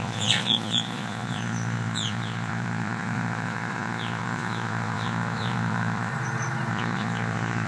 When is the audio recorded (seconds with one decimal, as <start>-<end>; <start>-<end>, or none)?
6.1-6.7

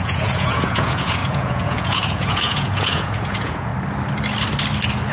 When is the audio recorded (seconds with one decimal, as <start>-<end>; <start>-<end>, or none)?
3.7-5.1